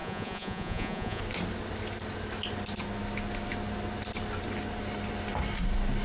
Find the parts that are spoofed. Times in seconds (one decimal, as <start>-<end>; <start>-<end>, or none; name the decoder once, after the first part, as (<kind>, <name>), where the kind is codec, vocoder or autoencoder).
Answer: 0.0-1.2 (vocoder, Vocos)